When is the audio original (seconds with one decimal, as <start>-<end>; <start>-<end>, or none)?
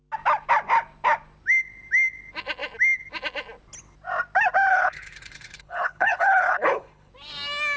0.0-4.7; 7.1-7.8